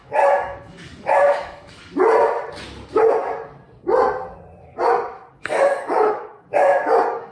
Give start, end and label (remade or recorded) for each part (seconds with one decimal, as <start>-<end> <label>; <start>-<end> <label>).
0.0-1.9 remade; 1.9-5.3 recorded; 5.3-7.3 remade

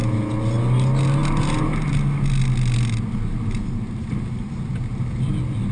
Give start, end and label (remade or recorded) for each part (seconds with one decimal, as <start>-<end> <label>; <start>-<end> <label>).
0.0-5.7 recorded

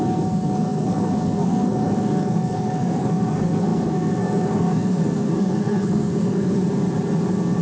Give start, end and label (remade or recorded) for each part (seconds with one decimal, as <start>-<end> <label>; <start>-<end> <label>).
0.0-6.6 remade; 6.6-7.6 recorded

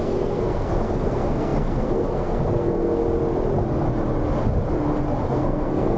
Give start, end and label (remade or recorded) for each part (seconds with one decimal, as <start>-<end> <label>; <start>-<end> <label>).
0.0-3.0 remade; 3.0-5.3 recorded; 5.3-6.0 remade